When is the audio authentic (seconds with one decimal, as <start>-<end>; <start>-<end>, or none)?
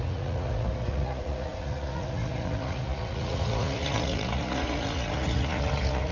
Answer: none